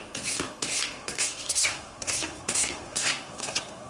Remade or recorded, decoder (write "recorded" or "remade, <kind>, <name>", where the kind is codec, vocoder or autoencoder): remade, codec, SNAC